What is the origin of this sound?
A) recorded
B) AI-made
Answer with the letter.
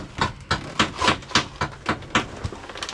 A